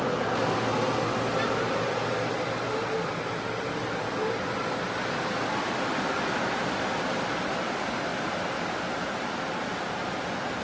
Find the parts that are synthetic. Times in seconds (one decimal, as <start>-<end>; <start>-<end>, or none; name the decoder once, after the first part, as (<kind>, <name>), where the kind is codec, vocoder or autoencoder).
none